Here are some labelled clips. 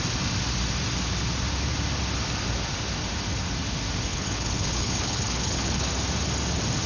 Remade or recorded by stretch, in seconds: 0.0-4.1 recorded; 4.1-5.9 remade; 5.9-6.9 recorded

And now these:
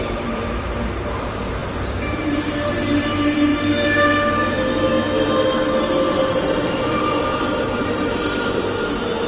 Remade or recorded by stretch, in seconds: 0.0-3.5 remade; 3.5-6.2 recorded; 6.2-9.3 remade

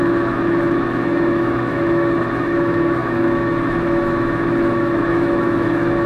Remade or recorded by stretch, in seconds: 0.0-6.1 remade

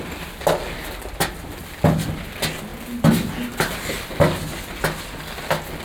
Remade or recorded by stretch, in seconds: 0.0-5.8 recorded

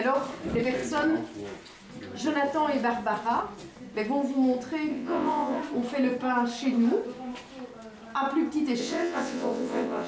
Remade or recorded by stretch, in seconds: 0.0-4.9 recorded; 4.9-5.6 remade; 5.6-8.8 recorded; 8.8-10.1 remade

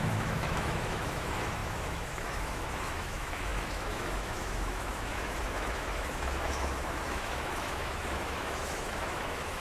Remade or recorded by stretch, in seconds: 0.0-9.6 remade

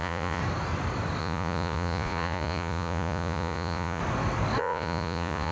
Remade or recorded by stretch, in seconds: 0.0-0.4 remade; 0.4-1.2 recorded; 1.2-4.0 remade; 4.0-4.6 recorded; 4.6-5.5 remade